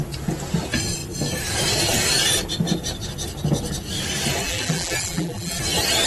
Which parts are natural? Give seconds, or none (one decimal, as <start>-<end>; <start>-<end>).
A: 0.0-4.4; 5.6-6.1